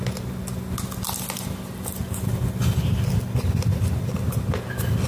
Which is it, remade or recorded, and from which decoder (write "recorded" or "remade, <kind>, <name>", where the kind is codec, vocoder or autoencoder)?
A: recorded